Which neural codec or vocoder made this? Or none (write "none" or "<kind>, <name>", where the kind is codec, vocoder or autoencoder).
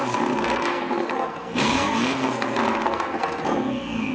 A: codec, SNAC